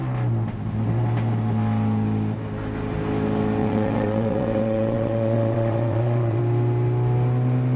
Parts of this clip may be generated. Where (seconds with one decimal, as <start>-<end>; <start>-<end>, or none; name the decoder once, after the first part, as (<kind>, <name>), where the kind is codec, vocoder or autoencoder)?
3.6-6.4 (vocoder, WaveNeXt)